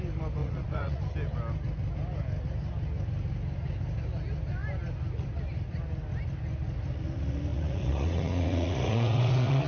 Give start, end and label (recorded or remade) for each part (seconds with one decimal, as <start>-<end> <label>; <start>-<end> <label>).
0.0-0.4 recorded; 0.4-1.0 remade; 1.0-7.5 recorded; 7.5-9.7 remade

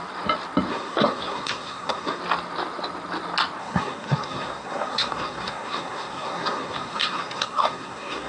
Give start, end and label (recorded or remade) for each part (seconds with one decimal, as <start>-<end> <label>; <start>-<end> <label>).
0.0-0.7 recorded; 0.7-2.2 remade; 2.2-3.6 recorded; 3.6-8.3 remade

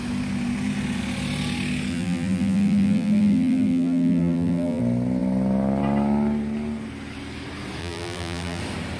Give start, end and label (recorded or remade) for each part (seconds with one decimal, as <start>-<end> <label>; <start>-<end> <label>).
0.0-1.9 recorded; 1.9-4.8 remade; 4.8-7.8 recorded; 7.8-8.6 remade; 8.6-9.0 recorded